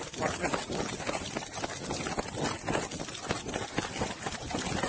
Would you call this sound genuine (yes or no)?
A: yes